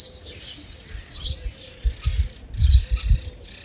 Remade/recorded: recorded